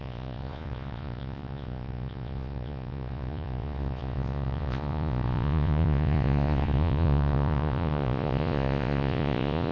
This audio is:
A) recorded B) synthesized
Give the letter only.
B